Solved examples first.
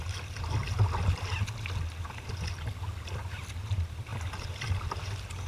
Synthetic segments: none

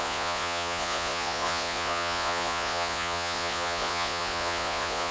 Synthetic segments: 0.0-5.1

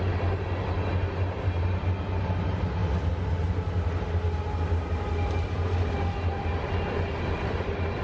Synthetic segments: none